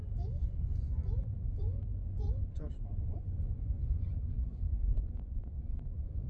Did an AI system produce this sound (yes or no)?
yes